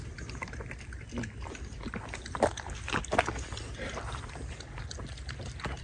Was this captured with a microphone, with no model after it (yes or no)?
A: yes